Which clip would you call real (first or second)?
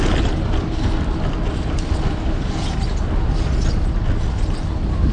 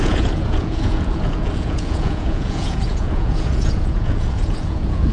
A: first